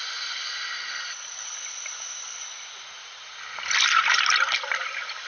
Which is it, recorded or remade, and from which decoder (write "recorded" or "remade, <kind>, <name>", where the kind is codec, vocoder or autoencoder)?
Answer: recorded